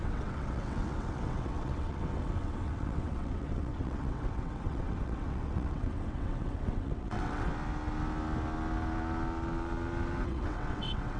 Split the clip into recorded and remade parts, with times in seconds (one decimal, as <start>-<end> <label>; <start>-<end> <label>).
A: 0.0-7.5 remade; 7.5-10.2 recorded; 10.2-11.2 remade